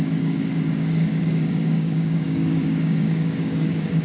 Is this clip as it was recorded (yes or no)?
no